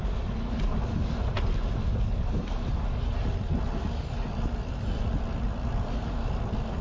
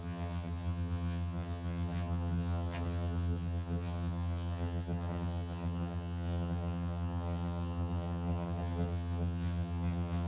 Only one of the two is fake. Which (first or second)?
second